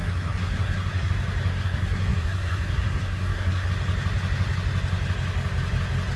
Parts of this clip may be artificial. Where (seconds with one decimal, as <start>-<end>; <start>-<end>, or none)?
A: 0.0-1.1; 1.5-3.7